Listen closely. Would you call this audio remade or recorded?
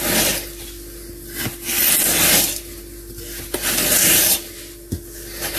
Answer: recorded